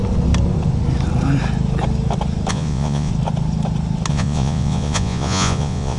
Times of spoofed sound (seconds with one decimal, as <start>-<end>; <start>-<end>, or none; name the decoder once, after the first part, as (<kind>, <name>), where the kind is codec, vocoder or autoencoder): 2.5-3.1 (vocoder, Vocos); 4.1-6.0